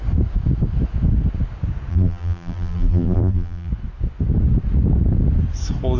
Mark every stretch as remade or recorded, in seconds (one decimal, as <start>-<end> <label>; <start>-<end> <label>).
0.0-1.9 recorded; 1.9-3.7 remade; 3.7-6.0 recorded